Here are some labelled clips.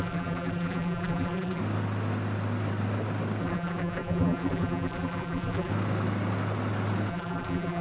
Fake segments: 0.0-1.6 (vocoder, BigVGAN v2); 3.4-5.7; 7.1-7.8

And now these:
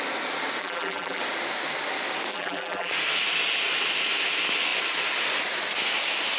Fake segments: 0.6-1.2 (vocoder, BigVGAN v2); 2.3-2.9

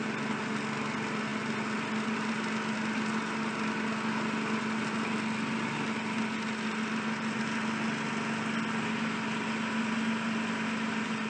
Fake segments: none

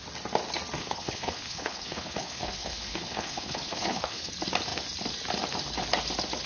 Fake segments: 0.8-4.3 (codec, HILCodec)